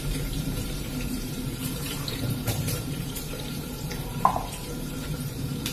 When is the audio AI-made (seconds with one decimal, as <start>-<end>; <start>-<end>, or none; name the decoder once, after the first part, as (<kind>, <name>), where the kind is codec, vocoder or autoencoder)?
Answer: 0.0-5.7 (vocoder, BigVGAN v2)